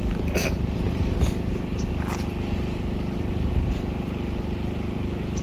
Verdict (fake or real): real